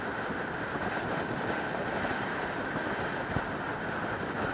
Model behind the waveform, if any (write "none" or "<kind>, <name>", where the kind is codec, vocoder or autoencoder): none